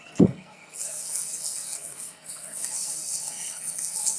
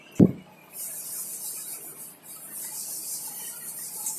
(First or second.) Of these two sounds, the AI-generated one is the first